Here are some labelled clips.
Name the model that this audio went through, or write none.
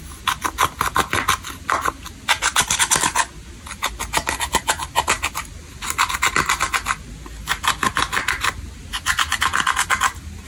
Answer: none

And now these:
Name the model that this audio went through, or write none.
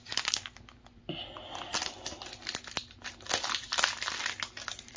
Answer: none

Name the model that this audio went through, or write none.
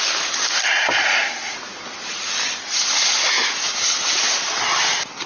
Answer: none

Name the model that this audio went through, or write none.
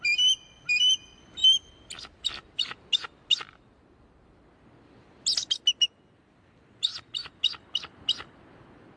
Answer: none